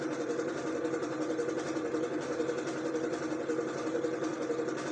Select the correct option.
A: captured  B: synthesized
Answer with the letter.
B